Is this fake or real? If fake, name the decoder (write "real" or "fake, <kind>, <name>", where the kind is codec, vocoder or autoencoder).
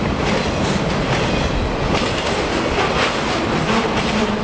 real